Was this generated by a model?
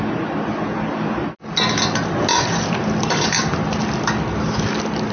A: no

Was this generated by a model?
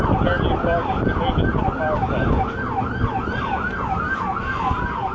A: no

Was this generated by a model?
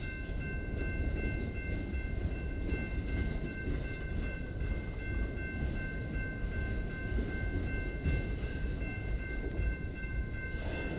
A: no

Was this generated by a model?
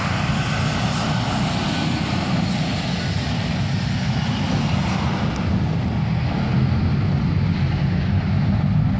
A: no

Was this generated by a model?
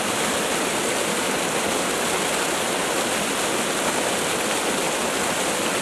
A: no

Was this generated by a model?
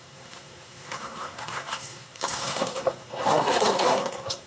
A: yes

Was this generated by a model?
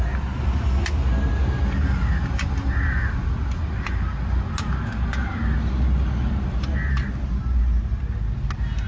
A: no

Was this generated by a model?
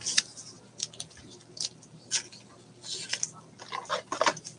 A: no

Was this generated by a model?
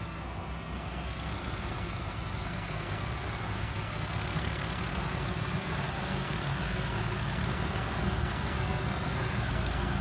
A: yes